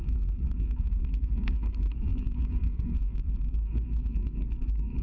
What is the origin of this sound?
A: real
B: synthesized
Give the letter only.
B